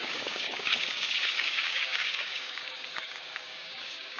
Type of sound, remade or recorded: remade